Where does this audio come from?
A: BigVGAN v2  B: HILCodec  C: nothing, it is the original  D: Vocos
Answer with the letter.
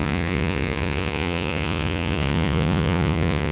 D